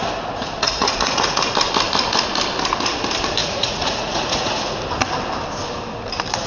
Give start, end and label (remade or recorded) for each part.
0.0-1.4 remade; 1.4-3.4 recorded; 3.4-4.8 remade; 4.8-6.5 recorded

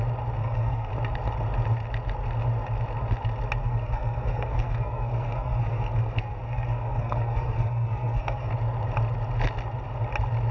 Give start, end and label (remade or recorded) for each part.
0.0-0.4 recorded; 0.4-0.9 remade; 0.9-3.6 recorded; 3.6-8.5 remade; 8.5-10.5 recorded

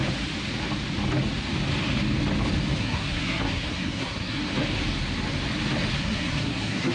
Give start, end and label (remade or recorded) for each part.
0.0-2.8 recorded; 2.8-4.4 remade; 4.4-6.0 recorded; 6.0-6.9 remade